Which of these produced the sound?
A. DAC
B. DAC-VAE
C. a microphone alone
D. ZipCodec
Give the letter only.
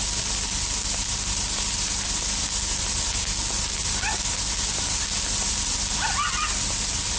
C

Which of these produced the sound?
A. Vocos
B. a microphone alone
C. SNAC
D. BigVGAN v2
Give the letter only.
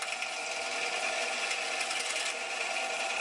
B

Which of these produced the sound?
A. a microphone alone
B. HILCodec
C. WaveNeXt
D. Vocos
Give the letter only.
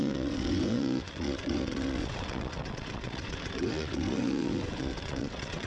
C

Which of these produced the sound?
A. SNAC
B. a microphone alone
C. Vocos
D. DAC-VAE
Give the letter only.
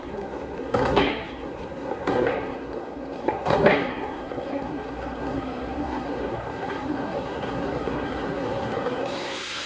A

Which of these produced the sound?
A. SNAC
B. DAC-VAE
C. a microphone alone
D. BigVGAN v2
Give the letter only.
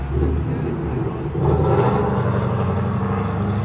C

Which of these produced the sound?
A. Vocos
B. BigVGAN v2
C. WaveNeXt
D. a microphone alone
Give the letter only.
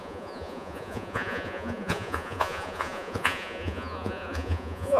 A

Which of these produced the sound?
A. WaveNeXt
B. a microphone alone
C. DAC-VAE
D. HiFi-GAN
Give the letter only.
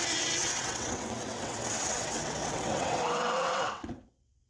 A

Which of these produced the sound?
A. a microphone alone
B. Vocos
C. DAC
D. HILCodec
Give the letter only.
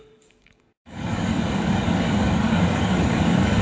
C